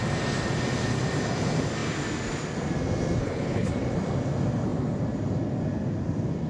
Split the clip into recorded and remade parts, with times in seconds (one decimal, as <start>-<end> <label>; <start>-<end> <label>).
0.0-3.2 recorded; 3.2-3.7 remade; 3.7-6.5 recorded